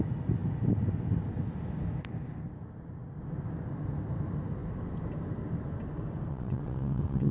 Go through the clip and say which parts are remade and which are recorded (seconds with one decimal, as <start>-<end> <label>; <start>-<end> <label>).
0.0-6.3 recorded; 6.3-7.3 remade